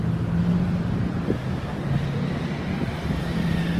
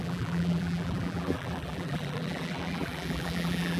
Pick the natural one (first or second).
first